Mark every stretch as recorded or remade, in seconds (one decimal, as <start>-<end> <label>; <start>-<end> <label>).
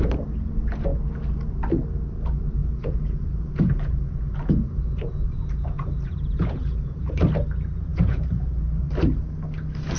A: 0.0-2.6 recorded; 2.6-7.1 remade; 7.1-7.9 recorded; 7.9-8.9 remade; 8.9-10.0 recorded